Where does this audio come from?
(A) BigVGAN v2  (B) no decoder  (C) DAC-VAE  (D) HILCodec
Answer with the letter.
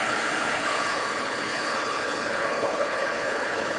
D